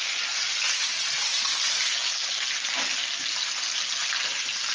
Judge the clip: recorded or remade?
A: recorded